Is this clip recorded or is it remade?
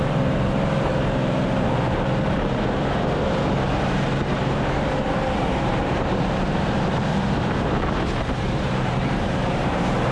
remade